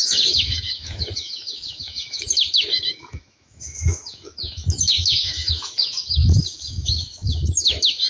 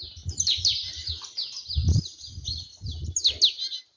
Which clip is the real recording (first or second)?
second